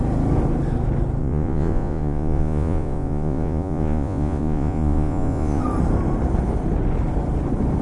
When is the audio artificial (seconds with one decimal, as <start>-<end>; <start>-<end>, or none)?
1.2-5.6

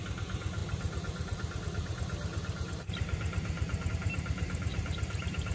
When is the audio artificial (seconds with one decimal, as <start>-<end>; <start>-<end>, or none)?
none

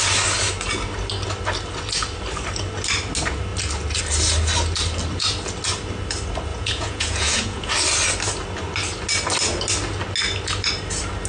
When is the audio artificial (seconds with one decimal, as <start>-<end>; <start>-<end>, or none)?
6.5-7.7

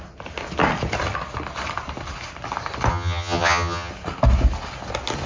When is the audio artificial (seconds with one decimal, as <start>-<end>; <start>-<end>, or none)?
2.9-3.9

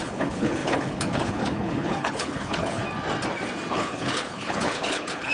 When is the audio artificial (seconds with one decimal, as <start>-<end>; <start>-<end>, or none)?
0.0-2.8; 3.7-5.3